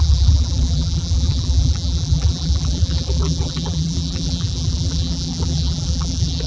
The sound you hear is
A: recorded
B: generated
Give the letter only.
B